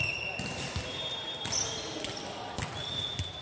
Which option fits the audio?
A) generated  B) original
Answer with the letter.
B